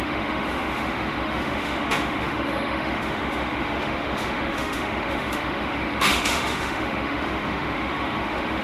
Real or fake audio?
fake